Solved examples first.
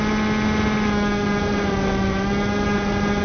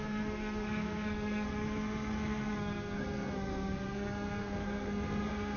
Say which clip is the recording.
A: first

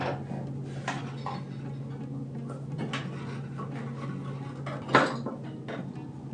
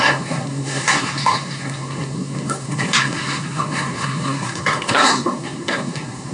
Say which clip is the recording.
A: first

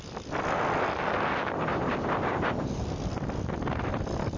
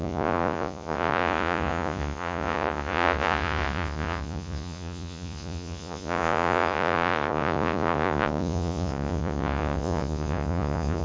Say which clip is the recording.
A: first